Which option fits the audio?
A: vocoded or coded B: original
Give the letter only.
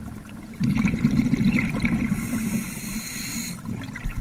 B